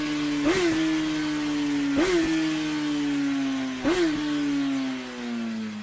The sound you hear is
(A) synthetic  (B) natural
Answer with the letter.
B